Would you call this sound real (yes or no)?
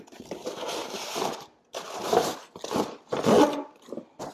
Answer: yes